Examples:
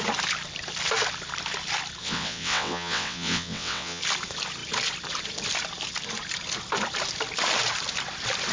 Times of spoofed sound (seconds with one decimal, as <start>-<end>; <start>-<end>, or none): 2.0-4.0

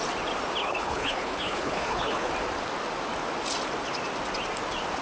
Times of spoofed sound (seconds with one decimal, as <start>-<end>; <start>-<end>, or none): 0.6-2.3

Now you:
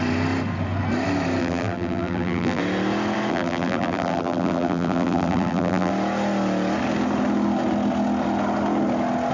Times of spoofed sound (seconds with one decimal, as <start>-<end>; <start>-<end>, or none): 1.4-2.6; 3.3-5.9